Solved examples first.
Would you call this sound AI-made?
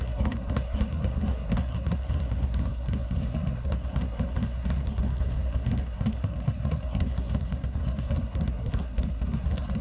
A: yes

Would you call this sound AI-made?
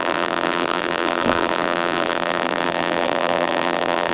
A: yes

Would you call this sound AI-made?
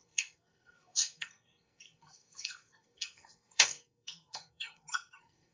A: yes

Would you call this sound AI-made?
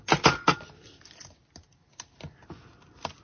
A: no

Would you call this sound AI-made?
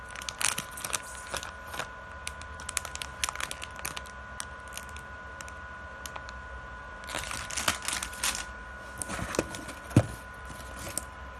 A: no